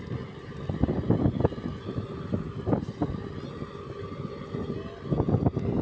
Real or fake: real